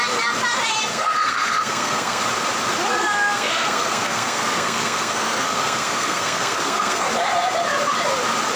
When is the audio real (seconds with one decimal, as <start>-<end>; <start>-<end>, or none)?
0.0-0.9; 2.2-2.9; 7.1-8.6